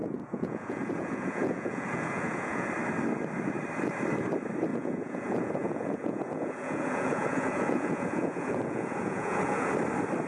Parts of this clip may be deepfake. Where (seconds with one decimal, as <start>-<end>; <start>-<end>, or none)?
0.0-2.7; 4.7-9.7